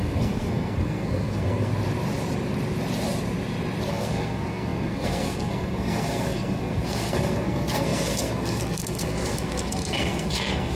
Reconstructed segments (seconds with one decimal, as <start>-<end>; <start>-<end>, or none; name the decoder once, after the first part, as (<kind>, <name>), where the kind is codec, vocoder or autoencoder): 0.0-1.7 (codec, SNAC); 3.9-10.7